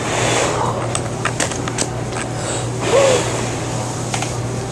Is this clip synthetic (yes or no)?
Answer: no